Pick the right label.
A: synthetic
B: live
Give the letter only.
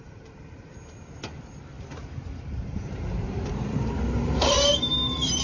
A